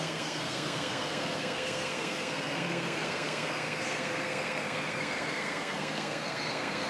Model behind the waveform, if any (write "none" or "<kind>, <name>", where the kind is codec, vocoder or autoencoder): codec, SNAC